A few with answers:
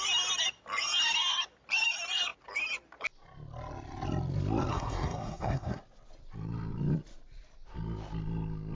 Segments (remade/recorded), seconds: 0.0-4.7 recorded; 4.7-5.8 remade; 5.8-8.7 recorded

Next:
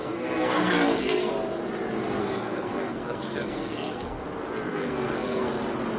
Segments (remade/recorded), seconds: 0.0-1.3 remade; 1.3-2.2 recorded; 2.2-4.2 remade; 4.2-4.7 recorded; 4.7-5.5 remade; 5.5-6.0 recorded

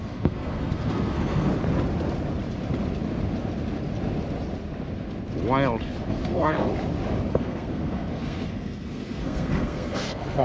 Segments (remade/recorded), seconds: 0.0-1.5 remade; 1.5-6.1 recorded; 6.1-6.7 remade; 6.7-7.3 recorded; 7.3-10.4 remade

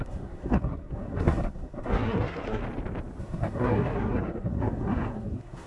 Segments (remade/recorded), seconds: 0.0-2.6 remade; 2.6-3.2 recorded; 3.2-5.7 remade

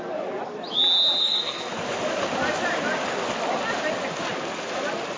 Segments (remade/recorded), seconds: 0.0-1.2 recorded; 1.2-1.7 remade; 1.7-5.2 recorded

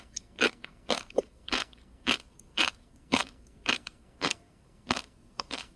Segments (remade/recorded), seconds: 0.0-5.8 remade